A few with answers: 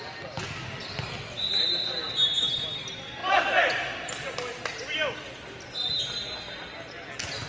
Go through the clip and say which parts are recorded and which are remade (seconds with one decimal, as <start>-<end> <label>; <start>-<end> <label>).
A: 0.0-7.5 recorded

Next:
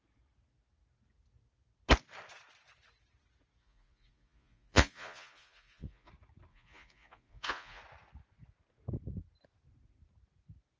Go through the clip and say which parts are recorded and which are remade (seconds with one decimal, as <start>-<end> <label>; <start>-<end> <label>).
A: 0.0-3.6 recorded; 3.6-6.1 remade; 6.1-6.5 recorded; 6.5-7.8 remade; 7.8-10.8 recorded

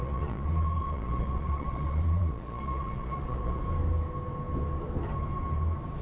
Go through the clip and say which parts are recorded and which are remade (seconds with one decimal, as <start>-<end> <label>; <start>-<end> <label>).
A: 0.0-3.6 remade; 3.6-6.0 recorded

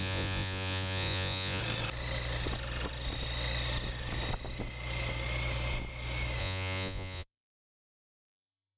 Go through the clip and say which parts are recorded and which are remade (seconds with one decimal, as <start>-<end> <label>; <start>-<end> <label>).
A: 0.0-1.6 remade; 1.6-6.4 recorded; 6.4-8.8 remade

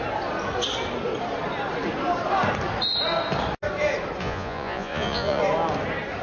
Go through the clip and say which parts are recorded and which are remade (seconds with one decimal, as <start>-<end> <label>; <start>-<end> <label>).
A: 0.0-4.2 recorded; 4.2-5.4 remade; 5.4-6.2 recorded

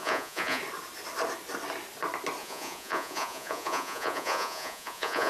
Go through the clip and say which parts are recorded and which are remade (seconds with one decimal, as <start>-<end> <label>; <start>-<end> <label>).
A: 0.0-0.6 remade; 0.6-2.4 recorded; 2.4-5.3 remade

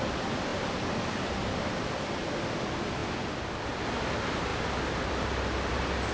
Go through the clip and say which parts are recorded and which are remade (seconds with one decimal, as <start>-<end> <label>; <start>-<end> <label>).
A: 0.0-6.1 recorded

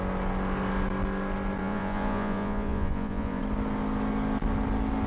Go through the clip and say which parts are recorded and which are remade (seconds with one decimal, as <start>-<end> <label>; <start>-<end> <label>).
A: 0.0-1.6 recorded; 1.6-3.4 remade; 3.4-5.1 recorded